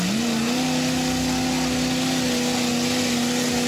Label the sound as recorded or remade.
recorded